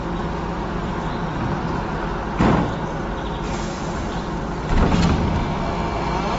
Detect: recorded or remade recorded